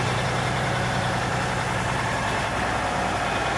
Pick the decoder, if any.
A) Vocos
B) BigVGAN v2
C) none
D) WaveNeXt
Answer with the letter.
C